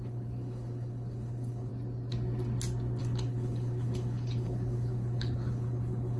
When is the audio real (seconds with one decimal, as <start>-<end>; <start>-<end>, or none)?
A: 1.7-3.0